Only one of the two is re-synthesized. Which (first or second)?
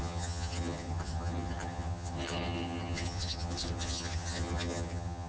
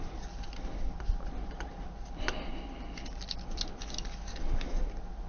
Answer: first